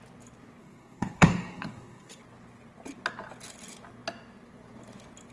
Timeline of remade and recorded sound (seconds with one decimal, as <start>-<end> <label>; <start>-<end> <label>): 0.0-0.6 recorded; 0.6-2.2 remade; 2.2-5.3 recorded